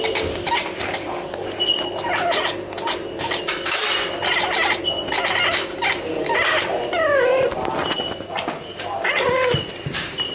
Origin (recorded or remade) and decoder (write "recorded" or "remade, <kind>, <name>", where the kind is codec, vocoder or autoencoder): recorded